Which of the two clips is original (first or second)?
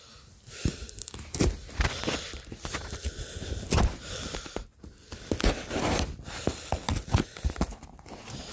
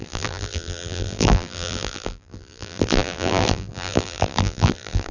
first